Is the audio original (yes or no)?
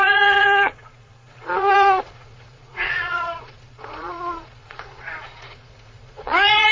no